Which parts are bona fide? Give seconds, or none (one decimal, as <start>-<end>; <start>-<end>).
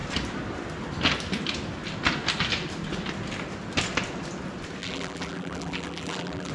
0.0-4.8